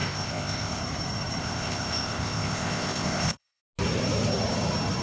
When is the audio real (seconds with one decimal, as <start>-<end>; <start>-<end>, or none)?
0.8-1.4; 3.6-5.0